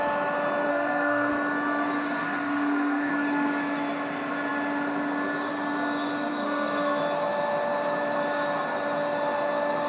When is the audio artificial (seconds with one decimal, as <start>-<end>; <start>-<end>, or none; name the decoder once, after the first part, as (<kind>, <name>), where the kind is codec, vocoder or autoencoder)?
0.7-1.3 (codec, SNAC); 2.2-3.1; 6.3-7.0